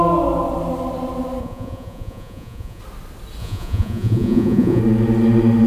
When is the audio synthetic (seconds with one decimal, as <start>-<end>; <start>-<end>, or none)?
1.4-2.8; 3.4-4.8

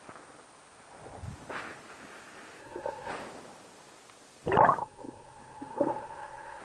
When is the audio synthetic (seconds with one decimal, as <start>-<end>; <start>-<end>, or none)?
2.6-3.1; 4.8-6.6

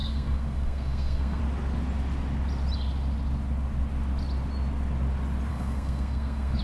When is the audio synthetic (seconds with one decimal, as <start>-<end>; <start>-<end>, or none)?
0.0-1.4; 5.5-6.6

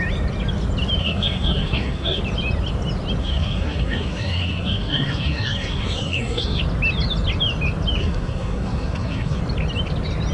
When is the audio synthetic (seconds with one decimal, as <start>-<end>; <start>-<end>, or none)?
1.0-2.2; 3.2-6.6; 8.0-9.4

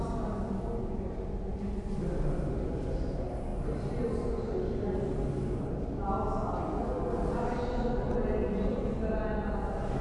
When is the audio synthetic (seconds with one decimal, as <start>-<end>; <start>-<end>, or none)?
none

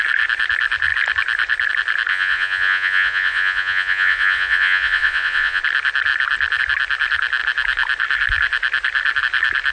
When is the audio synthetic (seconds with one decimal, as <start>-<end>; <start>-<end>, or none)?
2.1-5.6

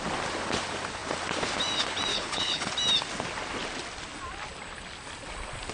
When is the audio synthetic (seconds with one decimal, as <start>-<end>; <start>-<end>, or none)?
2.1-2.7